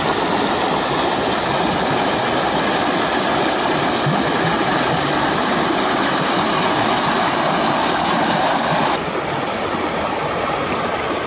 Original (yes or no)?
no